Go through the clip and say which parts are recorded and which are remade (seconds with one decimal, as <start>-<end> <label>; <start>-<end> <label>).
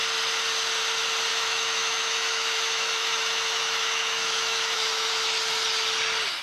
0.0-1.3 recorded; 1.3-5.1 remade; 5.1-6.4 recorded